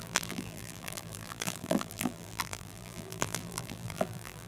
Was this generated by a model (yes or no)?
yes